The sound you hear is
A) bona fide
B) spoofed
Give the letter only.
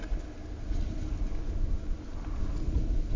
A